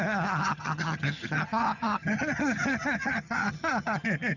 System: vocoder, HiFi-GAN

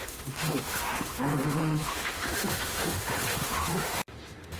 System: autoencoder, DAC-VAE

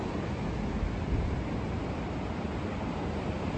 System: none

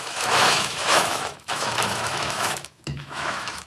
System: autoencoder, DAC-VAE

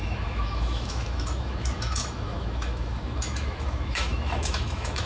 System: autoencoder, DAC-VAE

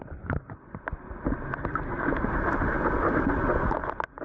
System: none